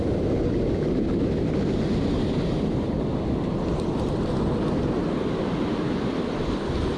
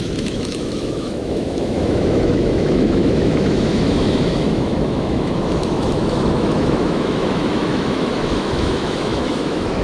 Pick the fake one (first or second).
second